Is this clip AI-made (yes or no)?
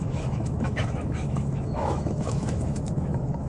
yes